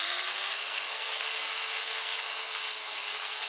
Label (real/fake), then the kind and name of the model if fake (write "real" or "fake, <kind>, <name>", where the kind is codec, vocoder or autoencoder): fake, codec, SNAC